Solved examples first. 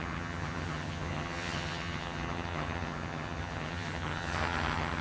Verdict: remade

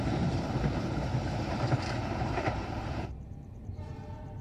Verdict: remade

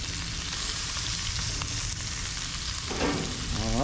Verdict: recorded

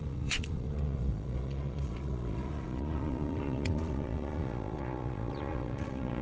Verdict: remade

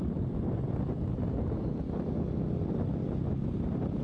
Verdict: recorded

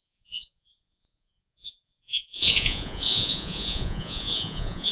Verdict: remade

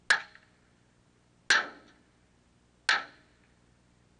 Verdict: recorded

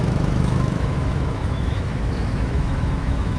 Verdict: remade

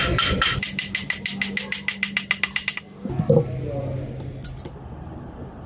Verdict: recorded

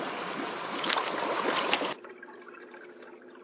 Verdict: recorded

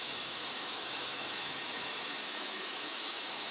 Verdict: remade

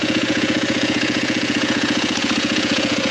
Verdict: remade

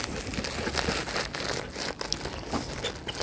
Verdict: recorded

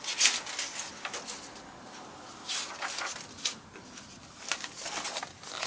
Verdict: recorded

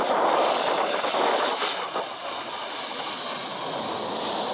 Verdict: recorded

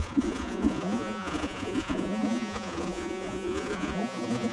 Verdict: remade